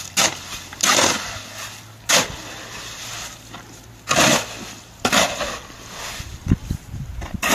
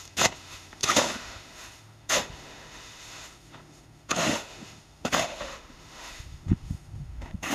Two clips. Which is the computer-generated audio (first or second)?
second